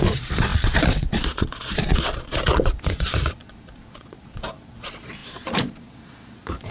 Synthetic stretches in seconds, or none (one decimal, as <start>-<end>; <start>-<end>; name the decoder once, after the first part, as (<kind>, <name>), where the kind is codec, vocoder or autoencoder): 0.0-6.7 (vocoder, Vocos)